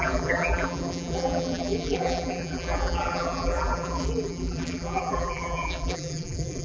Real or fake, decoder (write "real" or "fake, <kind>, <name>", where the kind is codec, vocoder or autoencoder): fake, vocoder, BigVGAN v2